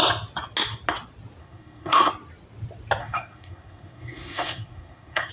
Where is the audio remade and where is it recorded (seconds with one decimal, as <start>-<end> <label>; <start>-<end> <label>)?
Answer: 0.0-1.4 recorded; 1.4-2.1 remade; 2.1-3.0 recorded; 3.0-5.3 remade